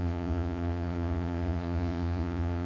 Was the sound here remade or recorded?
remade